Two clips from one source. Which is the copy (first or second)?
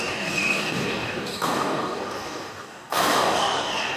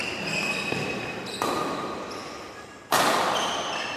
first